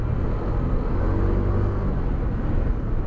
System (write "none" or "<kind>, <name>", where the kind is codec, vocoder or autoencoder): none